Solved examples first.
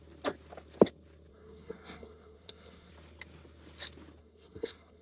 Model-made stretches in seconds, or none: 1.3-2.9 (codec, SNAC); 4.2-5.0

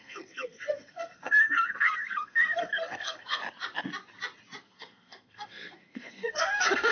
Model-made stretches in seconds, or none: 0.0-3.4 (codec, SNAC); 4.6-6.9

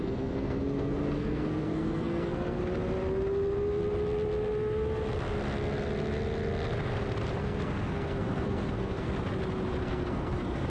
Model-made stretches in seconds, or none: 0.0-2.6 (codec, SNAC); 7.4-9.1; 9.8-10.7

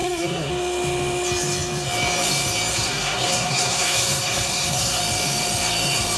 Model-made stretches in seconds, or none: 0.0-0.5 (codec, SNAC); 2.7-5.0